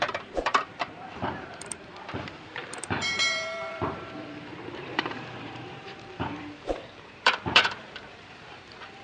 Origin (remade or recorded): remade